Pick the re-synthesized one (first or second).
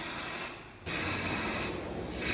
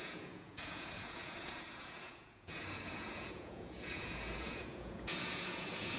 second